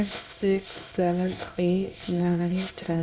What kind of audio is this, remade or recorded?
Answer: remade